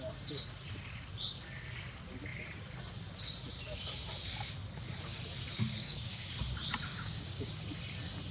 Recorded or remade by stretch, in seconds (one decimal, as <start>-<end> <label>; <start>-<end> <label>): 0.0-5.8 recorded; 5.8-6.3 remade; 6.3-6.9 recorded; 6.9-7.5 remade; 7.5-8.3 recorded